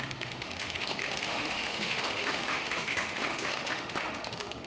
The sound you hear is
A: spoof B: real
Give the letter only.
A